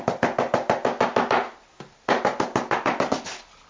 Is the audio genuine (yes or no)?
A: yes